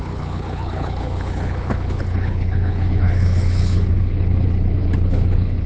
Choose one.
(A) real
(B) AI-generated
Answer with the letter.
B